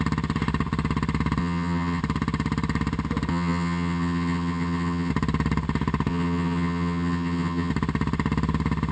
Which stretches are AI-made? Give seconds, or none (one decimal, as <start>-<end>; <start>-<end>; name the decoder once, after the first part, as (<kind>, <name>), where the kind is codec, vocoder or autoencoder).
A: 1.4-2.0 (vocoder, HiFi-GAN); 3.3-5.1; 6.1-7.7